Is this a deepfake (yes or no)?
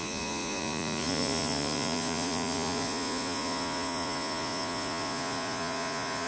yes